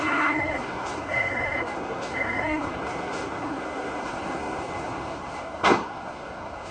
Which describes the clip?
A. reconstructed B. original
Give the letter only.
A